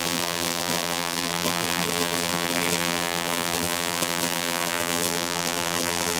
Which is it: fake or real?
fake